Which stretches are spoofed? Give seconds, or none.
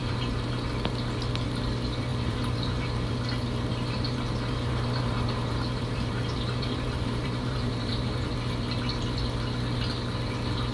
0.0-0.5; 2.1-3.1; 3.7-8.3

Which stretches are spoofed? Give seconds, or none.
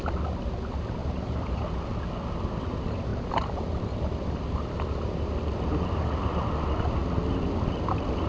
1.0-1.6; 3.1-4.0